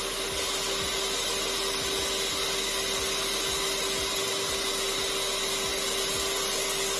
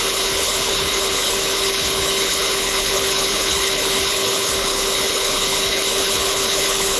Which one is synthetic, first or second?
second